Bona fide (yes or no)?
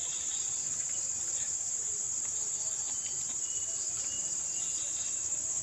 no